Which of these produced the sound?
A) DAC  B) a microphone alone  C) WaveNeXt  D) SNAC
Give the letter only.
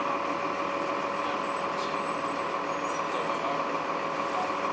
B